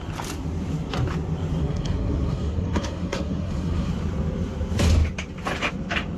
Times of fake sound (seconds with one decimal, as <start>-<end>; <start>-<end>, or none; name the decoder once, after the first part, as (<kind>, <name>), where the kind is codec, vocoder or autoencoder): 1.6-3.9 (codec, SNAC)